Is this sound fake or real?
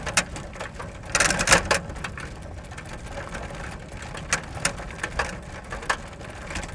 real